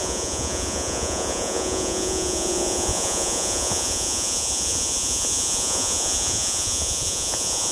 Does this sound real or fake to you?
fake